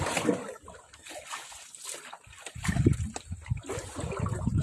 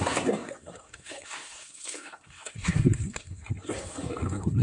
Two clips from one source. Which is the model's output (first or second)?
second